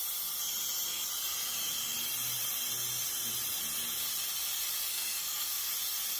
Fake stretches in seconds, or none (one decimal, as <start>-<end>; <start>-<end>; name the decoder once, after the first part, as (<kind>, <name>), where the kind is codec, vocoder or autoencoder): 4.9-5.7 (codec, SNAC)